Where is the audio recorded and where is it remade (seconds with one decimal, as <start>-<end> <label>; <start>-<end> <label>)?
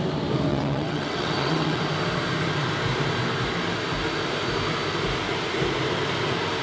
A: 0.0-0.5 recorded; 0.5-1.8 remade; 1.8-6.6 recorded